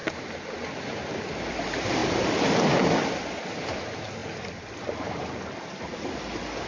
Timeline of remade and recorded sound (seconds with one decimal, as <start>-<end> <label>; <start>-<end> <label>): 0.0-6.7 recorded

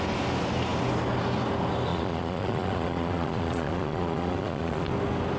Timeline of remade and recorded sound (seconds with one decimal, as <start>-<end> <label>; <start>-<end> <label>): 0.0-1.9 recorded; 1.9-4.9 remade; 4.9-5.4 recorded